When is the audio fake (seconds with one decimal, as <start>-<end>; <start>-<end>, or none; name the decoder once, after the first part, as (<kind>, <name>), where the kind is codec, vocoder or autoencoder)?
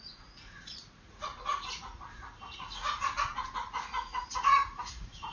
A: 0.0-5.3 (vocoder, Vocos)